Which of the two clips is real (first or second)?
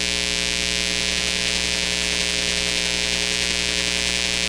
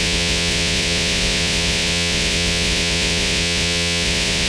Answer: first